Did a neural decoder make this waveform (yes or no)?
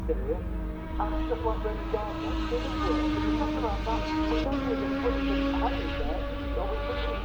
no